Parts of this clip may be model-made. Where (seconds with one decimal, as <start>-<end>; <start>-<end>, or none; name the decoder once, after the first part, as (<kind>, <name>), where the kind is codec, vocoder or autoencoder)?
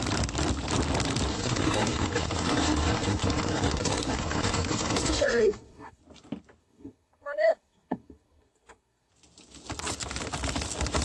1.3-6.0 (codec, SNAC); 6.6-9.1